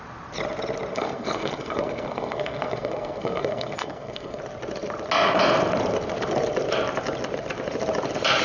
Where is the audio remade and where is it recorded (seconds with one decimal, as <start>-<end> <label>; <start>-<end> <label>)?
0.0-0.9 recorded; 0.9-4.4 remade; 4.4-8.4 recorded